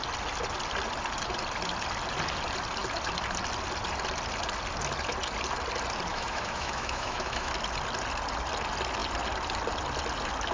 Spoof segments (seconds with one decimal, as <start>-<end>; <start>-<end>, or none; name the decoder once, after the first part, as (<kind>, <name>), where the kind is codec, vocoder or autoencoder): 6.1-7.5 (autoencoder, DAC-VAE)